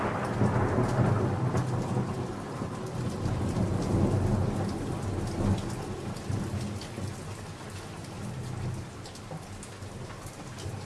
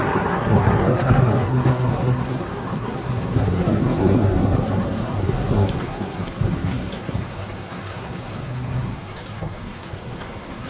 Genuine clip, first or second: first